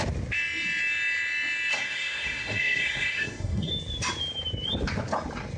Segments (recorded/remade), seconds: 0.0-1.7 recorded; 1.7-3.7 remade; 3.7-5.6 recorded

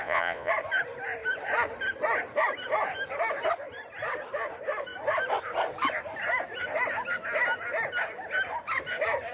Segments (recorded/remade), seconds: 0.0-0.5 remade; 0.5-9.3 recorded

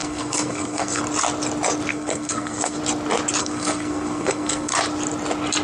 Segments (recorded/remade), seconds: 0.0-1.0 remade; 1.0-1.9 recorded; 1.9-2.8 remade; 2.8-3.4 recorded; 3.4-4.7 remade; 4.7-5.6 recorded

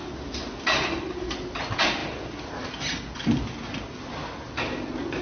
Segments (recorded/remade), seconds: 0.0-5.2 recorded

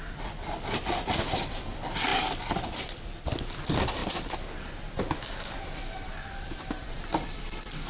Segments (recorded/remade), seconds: 0.0-4.0 remade; 4.0-5.0 recorded; 5.0-7.9 remade

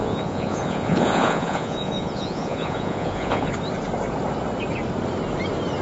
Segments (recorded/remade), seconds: 0.0-3.5 remade; 3.5-5.8 recorded

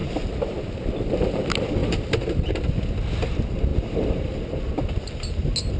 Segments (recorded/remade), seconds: 0.0-1.4 remade; 1.4-1.8 recorded; 1.8-2.5 remade; 2.5-5.8 recorded

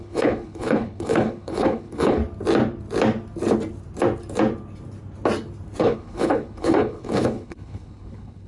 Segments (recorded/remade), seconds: 0.0-2.2 remade; 2.2-5.8 recorded; 5.8-8.5 remade